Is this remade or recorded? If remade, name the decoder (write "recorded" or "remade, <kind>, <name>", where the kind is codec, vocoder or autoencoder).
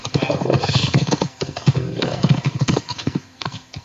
remade, codec, SNAC